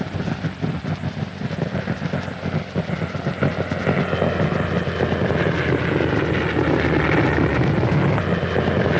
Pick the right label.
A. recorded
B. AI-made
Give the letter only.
A